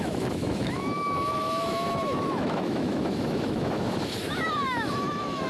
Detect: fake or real fake